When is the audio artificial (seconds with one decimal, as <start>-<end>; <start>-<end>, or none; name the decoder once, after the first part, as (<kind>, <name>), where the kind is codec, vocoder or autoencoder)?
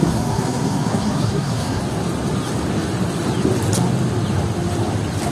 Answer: 0.0-1.8 (codec, SNAC)